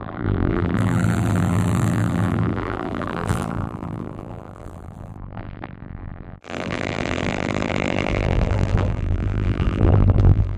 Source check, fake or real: fake